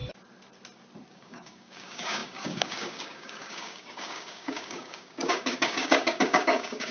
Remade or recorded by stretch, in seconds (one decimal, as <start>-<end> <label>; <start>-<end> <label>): 0.0-1.1 recorded; 1.1-6.9 remade